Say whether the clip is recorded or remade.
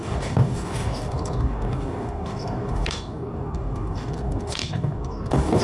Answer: remade